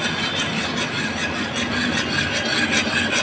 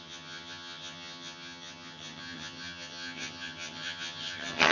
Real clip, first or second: first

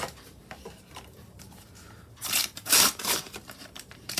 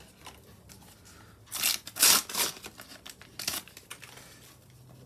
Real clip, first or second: second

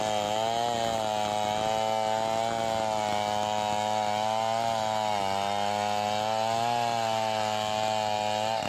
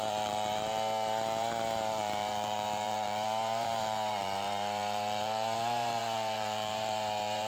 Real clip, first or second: first